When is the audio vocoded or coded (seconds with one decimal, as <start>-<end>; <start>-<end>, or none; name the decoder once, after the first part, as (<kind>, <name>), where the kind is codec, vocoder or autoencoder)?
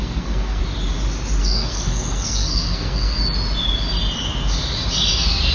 0.0-0.6 (codec, SNAC); 1.4-3.2